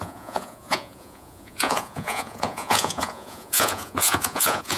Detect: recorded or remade remade